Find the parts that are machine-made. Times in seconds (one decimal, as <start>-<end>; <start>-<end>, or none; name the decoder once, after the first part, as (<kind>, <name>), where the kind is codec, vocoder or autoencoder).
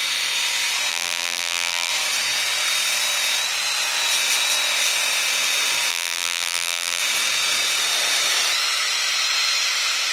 0.9-1.9 (vocoder, BigVGAN v2); 5.9-7.0